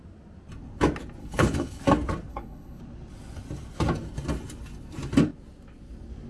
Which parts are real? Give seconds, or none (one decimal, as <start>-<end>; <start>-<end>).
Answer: 0.0-1.2; 1.8-2.3; 2.8-6.3